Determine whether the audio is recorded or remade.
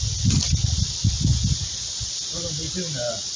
recorded